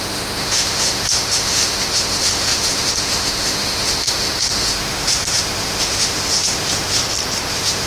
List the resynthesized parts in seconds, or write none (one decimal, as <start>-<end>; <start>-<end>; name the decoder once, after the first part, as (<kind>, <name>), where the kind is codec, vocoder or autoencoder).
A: 0.0-7.0 (autoencoder, DAC-VAE); 7.5-7.9